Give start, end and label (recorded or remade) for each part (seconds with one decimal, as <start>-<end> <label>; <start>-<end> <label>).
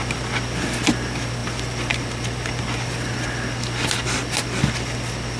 0.0-5.4 recorded